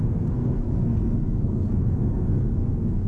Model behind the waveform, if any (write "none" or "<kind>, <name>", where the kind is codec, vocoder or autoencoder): codec, SNAC